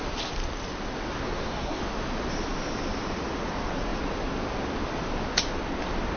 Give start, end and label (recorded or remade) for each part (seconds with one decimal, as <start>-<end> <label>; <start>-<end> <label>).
0.0-1.2 recorded; 1.2-1.8 remade; 1.8-6.2 recorded